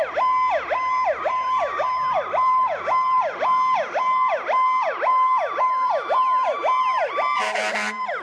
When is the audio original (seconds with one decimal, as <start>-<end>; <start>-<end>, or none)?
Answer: 5.1-5.6